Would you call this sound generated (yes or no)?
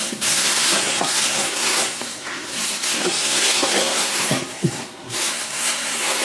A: yes